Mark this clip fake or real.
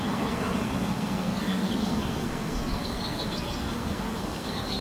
fake